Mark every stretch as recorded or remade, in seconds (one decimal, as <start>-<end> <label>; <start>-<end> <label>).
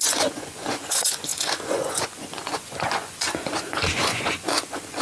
0.0-5.0 remade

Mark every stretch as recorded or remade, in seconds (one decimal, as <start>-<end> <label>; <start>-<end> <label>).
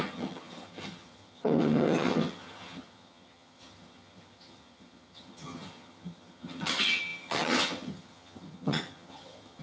0.0-9.6 remade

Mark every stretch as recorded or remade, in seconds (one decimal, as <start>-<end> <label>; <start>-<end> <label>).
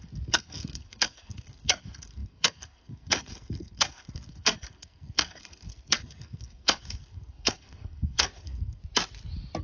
0.0-8.8 remade; 8.8-9.6 recorded